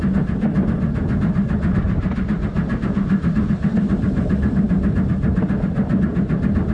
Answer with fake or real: real